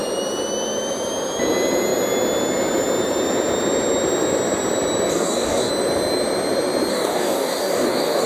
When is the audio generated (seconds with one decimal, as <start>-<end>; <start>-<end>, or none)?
5.1-5.7; 6.9-8.3